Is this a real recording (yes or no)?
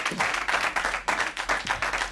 yes